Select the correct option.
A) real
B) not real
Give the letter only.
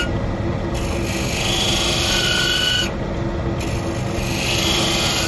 A